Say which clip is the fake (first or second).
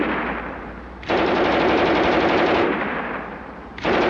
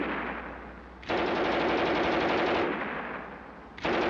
first